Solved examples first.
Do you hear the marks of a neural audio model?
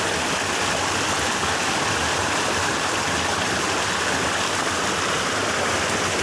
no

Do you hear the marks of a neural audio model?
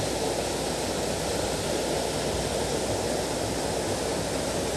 no